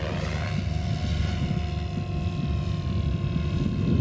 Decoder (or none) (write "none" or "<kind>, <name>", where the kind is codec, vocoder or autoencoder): none